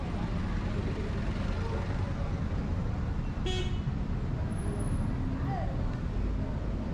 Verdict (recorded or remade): recorded